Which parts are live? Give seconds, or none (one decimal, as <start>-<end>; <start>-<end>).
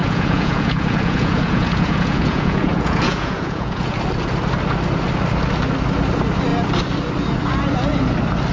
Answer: 4.0-8.5